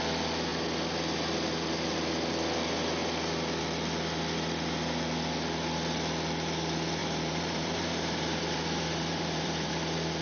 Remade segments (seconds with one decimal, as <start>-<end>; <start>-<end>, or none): 7.0-9.7

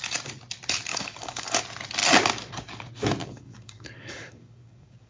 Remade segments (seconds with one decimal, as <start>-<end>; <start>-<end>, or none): 0.9-1.6; 3.2-5.1

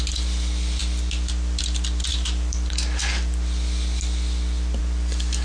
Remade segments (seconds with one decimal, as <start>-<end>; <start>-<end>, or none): none

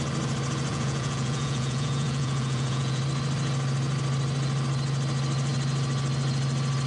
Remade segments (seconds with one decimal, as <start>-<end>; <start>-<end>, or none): 0.7-3.0

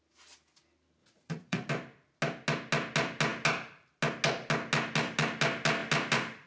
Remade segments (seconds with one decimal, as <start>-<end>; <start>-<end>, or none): 1.0-1.7

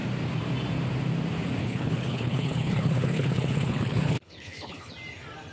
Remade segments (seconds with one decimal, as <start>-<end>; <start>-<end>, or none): 1.6-4.9

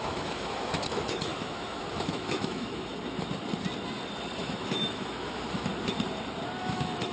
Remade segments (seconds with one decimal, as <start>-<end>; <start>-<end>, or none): 0.0-2.9; 4.4-5.7; 6.6-7.1